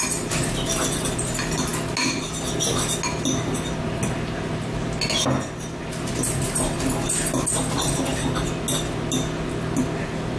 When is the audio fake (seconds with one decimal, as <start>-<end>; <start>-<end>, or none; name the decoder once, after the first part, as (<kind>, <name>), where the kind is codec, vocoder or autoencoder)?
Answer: none